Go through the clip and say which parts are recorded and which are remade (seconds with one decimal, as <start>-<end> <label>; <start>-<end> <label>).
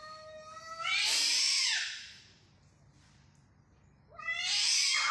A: 0.0-5.1 recorded